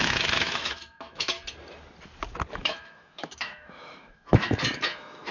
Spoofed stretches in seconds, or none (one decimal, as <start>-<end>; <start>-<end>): 0.0-1.4; 2.5-5.3